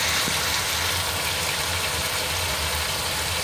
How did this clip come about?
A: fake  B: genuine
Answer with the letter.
B